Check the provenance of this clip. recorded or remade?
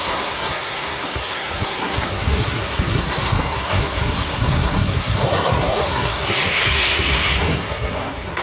remade